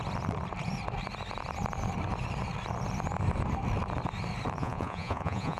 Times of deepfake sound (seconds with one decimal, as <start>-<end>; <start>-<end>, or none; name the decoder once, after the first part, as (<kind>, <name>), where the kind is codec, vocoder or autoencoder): 4.6-5.6 (vocoder, Vocos)